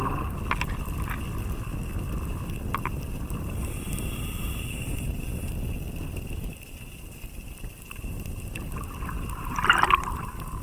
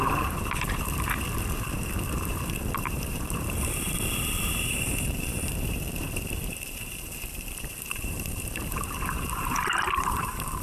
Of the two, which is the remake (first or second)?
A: second